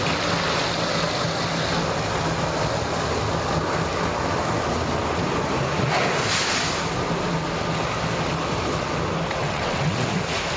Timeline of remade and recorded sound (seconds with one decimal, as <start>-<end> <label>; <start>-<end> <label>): 0.0-9.4 recorded; 9.4-10.0 remade; 10.0-10.6 recorded